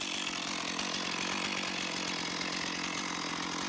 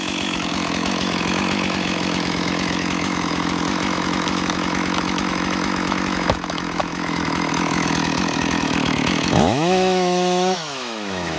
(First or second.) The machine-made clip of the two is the second